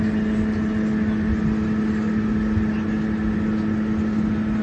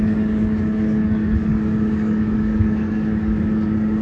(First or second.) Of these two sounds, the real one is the first